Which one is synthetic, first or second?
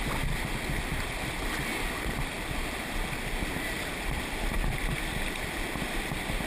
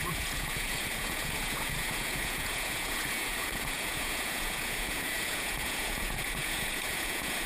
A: second